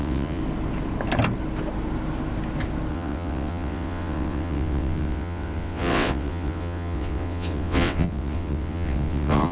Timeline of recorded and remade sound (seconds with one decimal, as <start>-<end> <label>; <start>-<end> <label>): 0.0-0.4 remade; 0.4-2.9 recorded; 2.9-9.5 remade